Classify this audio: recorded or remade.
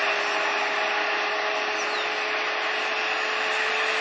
recorded